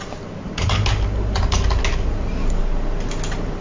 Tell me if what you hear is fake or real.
real